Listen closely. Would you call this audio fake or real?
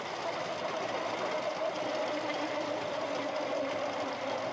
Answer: real